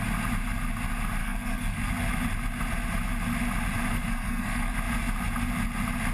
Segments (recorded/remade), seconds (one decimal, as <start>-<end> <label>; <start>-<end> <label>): 0.0-1.2 recorded; 1.2-1.9 remade; 1.9-3.9 recorded; 3.9-4.7 remade; 4.7-6.1 recorded